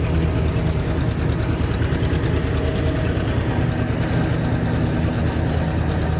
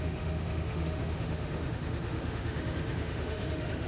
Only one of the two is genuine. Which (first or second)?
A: first